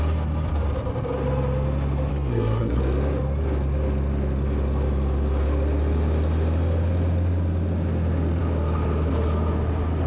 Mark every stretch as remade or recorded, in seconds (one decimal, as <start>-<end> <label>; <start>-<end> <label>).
0.0-2.1 recorded; 2.1-2.8 remade; 2.8-10.1 recorded